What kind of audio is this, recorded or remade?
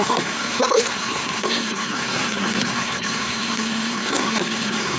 remade